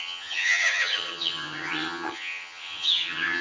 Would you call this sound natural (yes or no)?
no